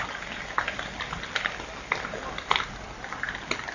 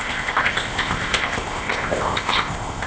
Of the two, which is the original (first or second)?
first